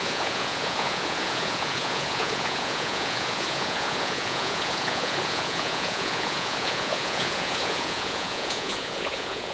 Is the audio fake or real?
fake